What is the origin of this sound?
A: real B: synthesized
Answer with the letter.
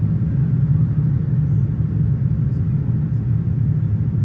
A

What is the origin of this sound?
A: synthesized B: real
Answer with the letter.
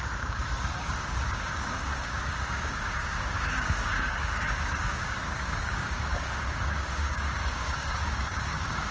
A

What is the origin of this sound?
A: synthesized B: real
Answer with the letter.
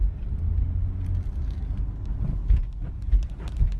B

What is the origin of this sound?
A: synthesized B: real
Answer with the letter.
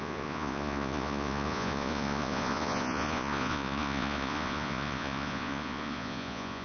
A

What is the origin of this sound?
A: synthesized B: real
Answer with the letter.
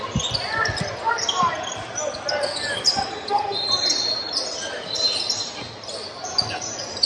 B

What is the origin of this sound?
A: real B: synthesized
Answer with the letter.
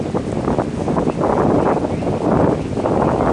A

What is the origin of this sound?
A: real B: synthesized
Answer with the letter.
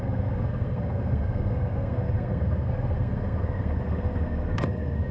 B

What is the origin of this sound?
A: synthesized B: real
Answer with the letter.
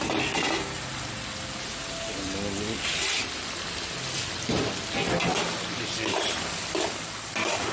B